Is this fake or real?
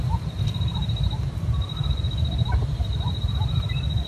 real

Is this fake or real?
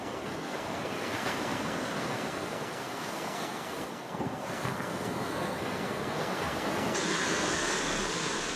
fake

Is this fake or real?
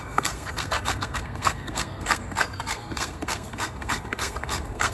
fake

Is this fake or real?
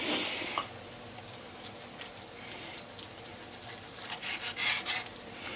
real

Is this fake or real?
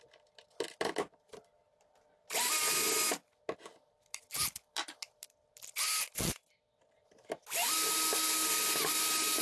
real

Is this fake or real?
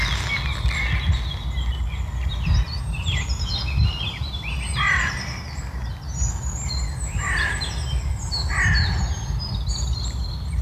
real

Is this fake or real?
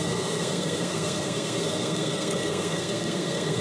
fake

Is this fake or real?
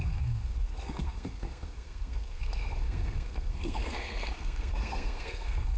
fake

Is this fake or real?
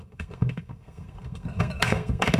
fake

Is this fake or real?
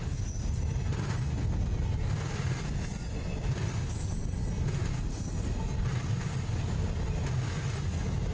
real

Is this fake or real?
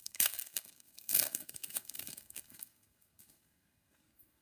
fake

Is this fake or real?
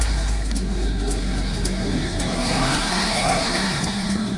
fake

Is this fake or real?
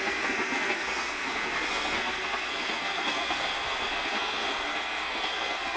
fake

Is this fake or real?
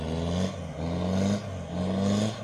real